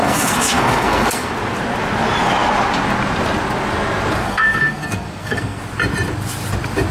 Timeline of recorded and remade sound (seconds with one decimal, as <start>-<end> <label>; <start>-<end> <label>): 0.0-1.3 remade; 1.3-4.2 recorded; 4.2-5.6 remade; 5.6-6.9 recorded